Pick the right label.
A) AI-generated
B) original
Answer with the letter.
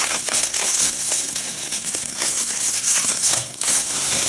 A